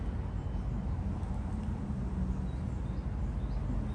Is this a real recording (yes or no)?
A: yes